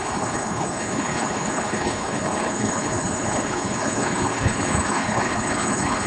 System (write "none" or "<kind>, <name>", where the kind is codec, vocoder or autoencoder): codec, HILCodec